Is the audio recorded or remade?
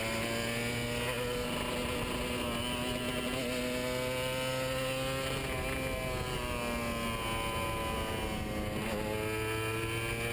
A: recorded